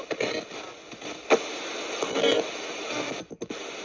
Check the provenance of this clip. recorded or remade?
recorded